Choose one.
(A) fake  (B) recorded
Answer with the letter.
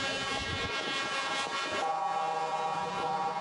A